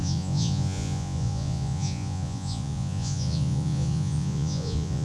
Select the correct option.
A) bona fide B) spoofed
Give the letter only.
B